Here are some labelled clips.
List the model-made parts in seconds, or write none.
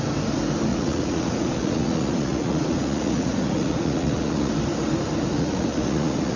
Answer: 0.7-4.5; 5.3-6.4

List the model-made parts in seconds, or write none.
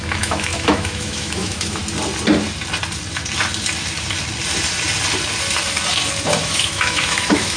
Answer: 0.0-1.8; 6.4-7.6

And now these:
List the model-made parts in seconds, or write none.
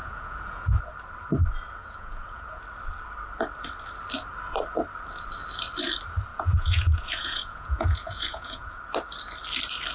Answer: 0.0-0.8; 1.8-2.6; 6.3-8.8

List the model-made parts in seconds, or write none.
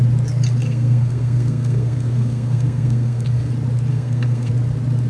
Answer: 0.6-3.5; 3.9-4.5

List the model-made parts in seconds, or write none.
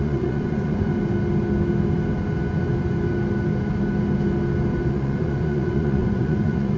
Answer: 0.0-0.9; 4.9-6.8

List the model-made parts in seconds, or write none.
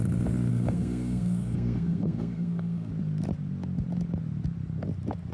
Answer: 0.5-2.9